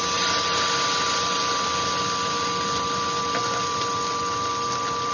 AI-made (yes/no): no